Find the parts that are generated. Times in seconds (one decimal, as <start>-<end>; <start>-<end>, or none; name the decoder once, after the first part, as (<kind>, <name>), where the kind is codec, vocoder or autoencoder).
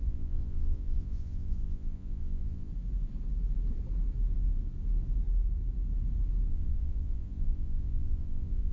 0.0-2.7 (vocoder, Vocos); 6.5-8.7